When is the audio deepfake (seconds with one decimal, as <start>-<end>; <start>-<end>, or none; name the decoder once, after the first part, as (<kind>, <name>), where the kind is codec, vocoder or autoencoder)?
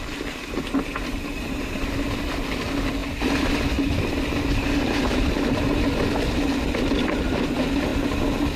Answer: none